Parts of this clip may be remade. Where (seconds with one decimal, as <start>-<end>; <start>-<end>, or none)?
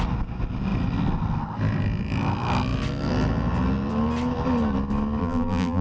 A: 5.2-5.8